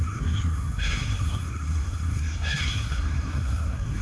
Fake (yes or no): yes